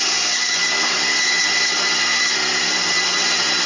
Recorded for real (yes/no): yes